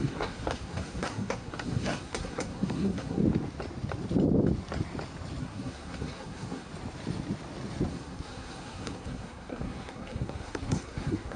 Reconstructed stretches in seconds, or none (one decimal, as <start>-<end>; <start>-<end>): 0.0-3.2; 5.4-6.7; 7.9-11.4